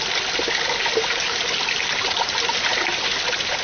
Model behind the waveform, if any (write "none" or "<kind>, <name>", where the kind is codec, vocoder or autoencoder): none